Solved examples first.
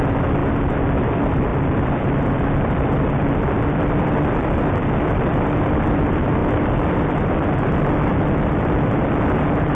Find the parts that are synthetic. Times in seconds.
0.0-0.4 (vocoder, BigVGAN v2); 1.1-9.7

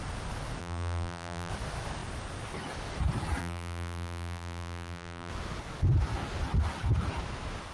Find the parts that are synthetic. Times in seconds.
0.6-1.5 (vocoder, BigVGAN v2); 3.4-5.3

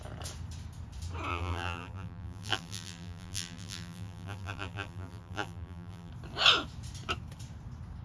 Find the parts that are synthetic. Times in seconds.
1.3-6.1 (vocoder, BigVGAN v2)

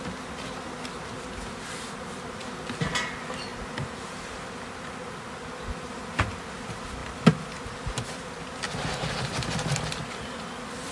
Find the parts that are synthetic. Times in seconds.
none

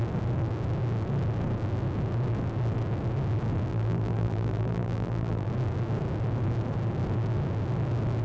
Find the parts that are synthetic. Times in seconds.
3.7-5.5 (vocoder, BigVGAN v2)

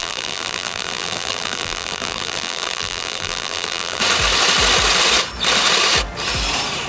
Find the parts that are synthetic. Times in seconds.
0.0-4.0 (vocoder, BigVGAN v2)